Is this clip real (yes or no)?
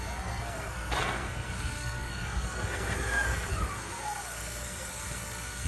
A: no